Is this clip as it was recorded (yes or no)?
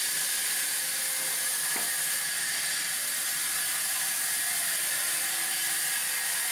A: yes